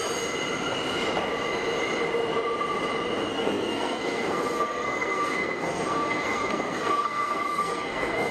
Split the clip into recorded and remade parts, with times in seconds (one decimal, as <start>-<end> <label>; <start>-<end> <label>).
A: 0.0-3.3 recorded; 3.3-8.3 remade